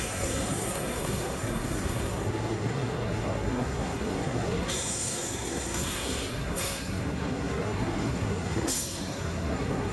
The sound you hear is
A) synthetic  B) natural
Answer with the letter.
A